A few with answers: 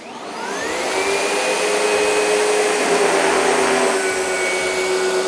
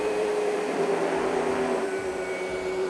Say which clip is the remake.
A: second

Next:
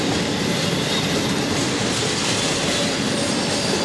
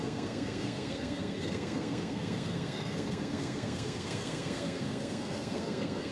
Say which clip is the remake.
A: second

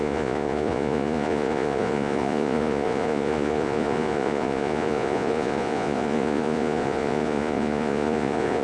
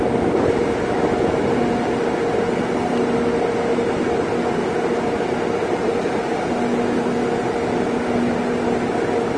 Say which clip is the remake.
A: first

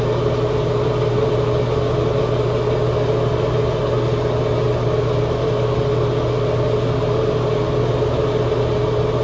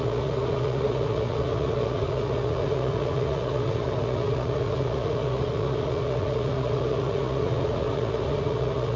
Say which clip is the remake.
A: second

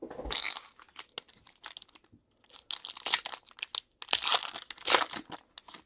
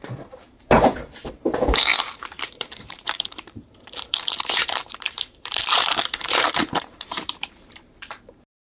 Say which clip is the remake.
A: second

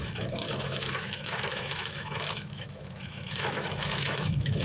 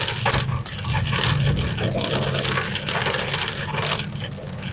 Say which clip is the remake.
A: first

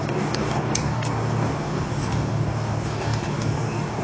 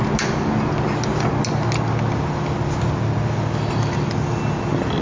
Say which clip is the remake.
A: first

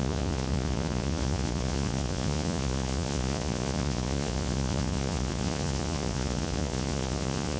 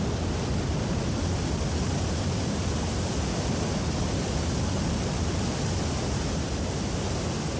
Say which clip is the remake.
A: first